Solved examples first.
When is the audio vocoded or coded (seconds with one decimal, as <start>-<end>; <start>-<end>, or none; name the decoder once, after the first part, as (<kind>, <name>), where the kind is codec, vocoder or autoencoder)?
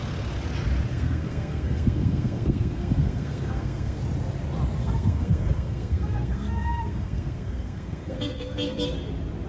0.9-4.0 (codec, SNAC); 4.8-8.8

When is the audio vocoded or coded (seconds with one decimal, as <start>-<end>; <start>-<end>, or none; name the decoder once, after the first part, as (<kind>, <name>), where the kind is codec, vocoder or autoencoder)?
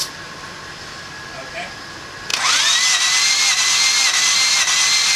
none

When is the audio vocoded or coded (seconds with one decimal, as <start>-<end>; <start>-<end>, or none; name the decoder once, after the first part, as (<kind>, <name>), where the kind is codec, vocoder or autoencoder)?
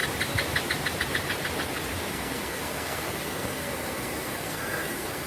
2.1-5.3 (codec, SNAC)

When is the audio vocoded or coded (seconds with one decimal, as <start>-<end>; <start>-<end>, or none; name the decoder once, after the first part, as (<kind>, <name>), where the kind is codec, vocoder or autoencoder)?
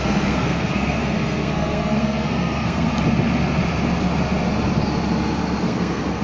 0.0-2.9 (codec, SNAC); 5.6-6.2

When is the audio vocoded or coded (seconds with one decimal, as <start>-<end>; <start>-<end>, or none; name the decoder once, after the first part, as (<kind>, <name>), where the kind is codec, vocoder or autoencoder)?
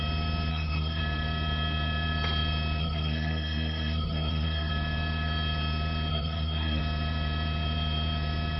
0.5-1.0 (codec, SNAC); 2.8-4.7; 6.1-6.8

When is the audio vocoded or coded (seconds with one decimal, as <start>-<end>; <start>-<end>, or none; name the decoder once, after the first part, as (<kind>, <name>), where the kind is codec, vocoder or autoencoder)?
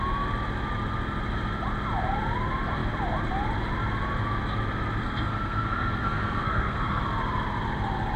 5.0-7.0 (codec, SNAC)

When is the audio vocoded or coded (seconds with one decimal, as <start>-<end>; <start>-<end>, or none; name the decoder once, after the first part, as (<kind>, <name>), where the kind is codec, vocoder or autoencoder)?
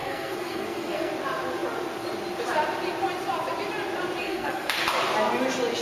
0.0-1.1 (codec, SNAC); 4.2-4.8